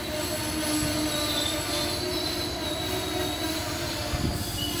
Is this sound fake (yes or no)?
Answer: no